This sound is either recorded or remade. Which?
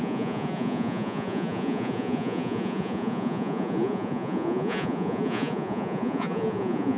remade